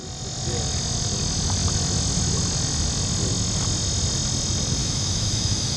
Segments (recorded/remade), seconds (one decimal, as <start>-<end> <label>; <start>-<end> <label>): 0.0-4.8 recorded; 4.8-5.8 remade